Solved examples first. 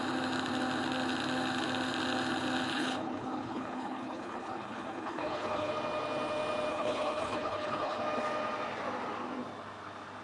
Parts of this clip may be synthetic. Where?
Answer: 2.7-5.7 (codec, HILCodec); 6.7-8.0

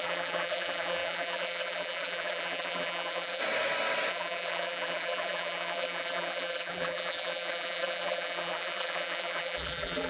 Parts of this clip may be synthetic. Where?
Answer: 0.0-3.4 (vocoder, BigVGAN v2); 4.1-10.1

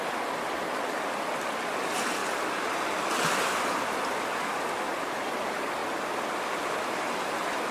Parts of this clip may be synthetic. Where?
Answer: 2.2-3.0 (vocoder, BigVGAN v2)

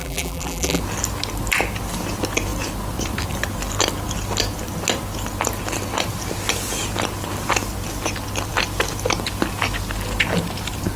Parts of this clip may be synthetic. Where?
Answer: 0.0-0.8 (vocoder, BigVGAN v2)

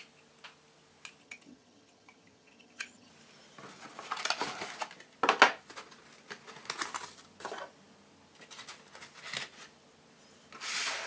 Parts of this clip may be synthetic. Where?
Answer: 1.2-3.1 (vocoder, HiFi-GAN)

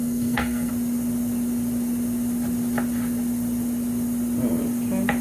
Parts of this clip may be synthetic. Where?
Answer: 0.0-0.7 (codec, SNAC)

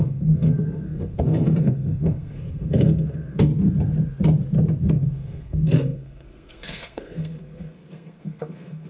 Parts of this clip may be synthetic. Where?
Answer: 0.0-3.5 (codec, SNAC); 4.8-8.9

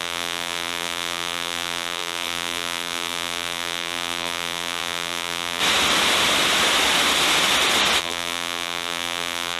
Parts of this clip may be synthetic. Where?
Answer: 0.0-5.6 (vocoder, BigVGAN v2); 8.0-9.6